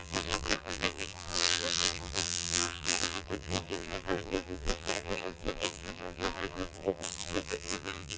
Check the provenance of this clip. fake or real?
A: fake